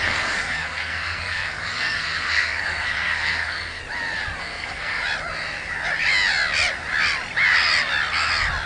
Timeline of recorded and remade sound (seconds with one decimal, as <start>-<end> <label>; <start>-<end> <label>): 0.0-3.8 remade; 3.8-4.4 recorded; 4.4-5.0 remade; 5.0-8.7 recorded